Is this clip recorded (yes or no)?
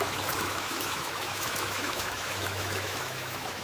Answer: no